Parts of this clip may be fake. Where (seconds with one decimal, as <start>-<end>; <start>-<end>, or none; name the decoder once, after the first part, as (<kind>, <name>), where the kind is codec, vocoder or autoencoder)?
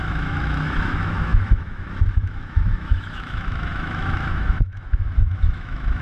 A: 0.0-6.0 (autoencoder, DAC-VAE)